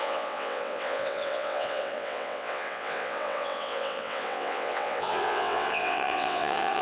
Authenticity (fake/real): fake